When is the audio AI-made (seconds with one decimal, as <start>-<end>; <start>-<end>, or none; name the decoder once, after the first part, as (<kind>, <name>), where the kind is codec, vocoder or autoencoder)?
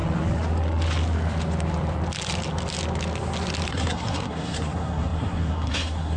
3.7-6.2 (codec, SNAC)